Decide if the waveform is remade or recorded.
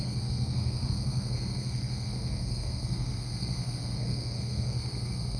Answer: remade